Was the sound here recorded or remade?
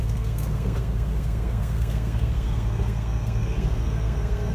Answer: remade